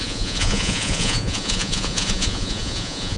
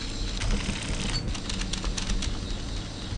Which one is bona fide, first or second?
second